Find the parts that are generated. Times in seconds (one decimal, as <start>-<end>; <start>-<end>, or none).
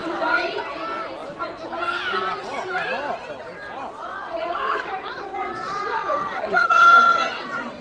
0.0-0.6; 4.0-7.8